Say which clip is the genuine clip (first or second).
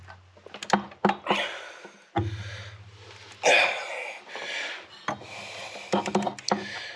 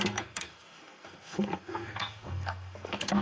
first